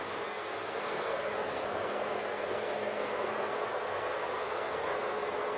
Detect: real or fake fake